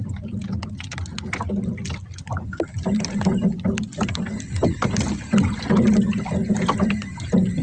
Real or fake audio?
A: real